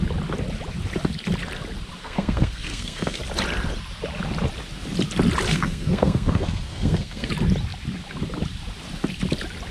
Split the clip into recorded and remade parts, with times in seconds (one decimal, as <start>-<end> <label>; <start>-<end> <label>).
0.0-2.0 recorded; 2.0-3.2 remade; 3.2-5.5 recorded; 5.5-7.3 remade; 7.3-9.7 recorded